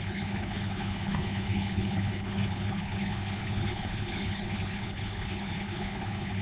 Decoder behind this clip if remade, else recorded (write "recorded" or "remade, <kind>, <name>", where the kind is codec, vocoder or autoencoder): remade, codec, HILCodec